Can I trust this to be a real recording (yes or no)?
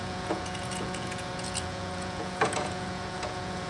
no